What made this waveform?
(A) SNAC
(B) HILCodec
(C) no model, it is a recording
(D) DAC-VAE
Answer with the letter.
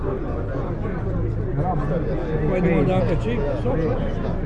C